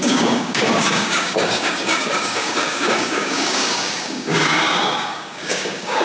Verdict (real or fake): fake